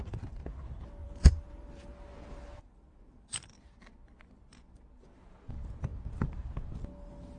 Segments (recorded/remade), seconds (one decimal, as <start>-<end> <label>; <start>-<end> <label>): 0.0-1.0 recorded; 1.0-3.5 remade; 3.5-5.9 recorded; 5.9-6.8 remade; 6.8-7.4 recorded